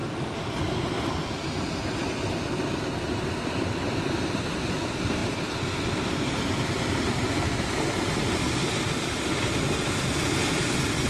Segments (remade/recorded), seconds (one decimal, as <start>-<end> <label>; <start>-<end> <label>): 0.0-11.1 recorded